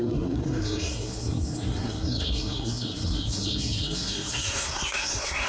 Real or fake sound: fake